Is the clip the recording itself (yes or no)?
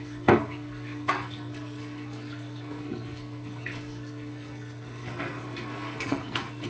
no